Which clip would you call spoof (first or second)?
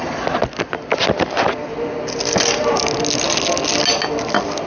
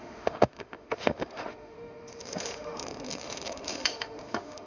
second